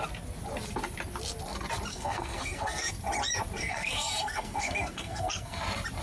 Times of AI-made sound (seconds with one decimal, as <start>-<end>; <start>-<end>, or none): 1.9-2.9; 3.6-5.6